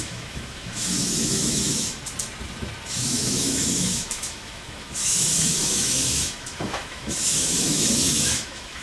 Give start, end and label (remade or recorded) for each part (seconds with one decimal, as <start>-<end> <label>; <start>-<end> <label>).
0.0-2.0 remade; 2.0-2.9 recorded; 2.9-8.8 remade